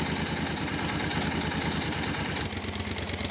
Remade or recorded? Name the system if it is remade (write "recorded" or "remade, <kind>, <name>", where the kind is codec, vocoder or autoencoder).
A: recorded